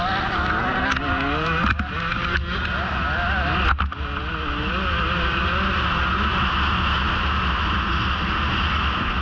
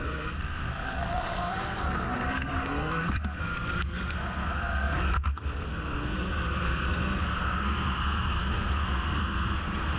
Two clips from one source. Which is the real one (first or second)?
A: first